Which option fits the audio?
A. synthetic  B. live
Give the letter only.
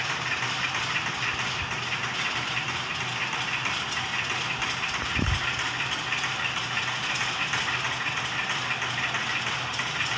B